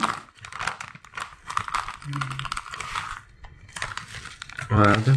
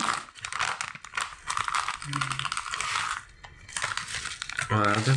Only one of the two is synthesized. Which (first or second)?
first